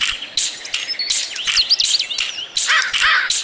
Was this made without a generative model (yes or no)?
yes